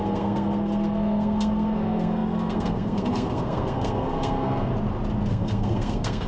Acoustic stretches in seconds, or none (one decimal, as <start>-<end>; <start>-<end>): 4.7-5.3